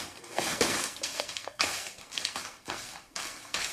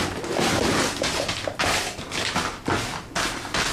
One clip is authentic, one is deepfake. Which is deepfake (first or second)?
first